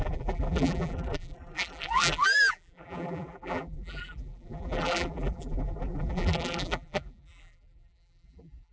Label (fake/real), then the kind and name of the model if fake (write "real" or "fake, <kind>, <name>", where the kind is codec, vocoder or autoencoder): fake, vocoder, BigVGAN v2